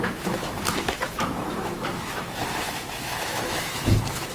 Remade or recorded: remade